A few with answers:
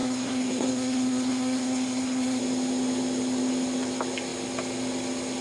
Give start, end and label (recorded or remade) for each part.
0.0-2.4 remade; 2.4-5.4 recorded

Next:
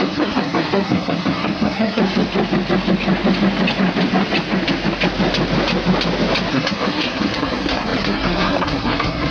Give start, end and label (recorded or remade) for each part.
0.0-2.0 remade; 2.0-6.5 recorded; 6.5-9.3 remade

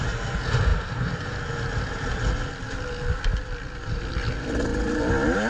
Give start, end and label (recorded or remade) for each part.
0.0-5.5 recorded

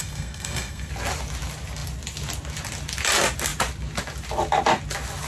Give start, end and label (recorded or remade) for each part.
0.0-0.9 remade; 0.9-5.3 recorded